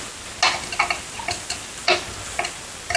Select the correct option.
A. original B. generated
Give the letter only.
A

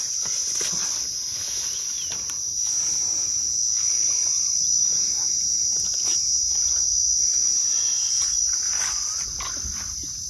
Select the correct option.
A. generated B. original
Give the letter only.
B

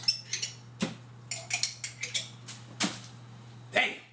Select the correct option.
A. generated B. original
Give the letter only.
B